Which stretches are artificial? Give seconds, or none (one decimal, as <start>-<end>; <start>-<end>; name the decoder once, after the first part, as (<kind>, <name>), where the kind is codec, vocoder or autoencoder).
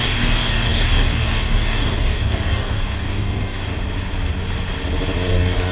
0.0-3.7 (codec, DAC); 5.3-5.7